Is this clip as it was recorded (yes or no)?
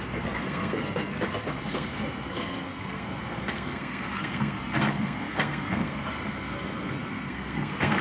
no